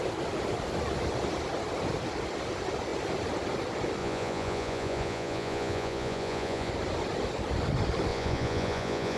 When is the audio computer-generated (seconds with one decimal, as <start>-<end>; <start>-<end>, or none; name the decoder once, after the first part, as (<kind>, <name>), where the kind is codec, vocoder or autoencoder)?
4.0-6.7 (vocoder, Vocos); 8.1-9.2